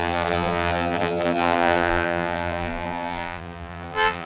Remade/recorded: remade